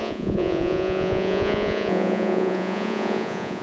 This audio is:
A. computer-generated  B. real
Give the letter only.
A